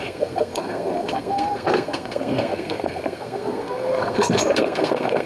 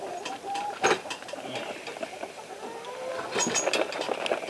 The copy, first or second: first